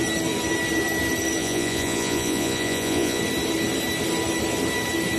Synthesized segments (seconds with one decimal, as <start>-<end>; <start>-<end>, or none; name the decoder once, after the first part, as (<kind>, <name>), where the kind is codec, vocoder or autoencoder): 1.4-3.2 (vocoder, Vocos)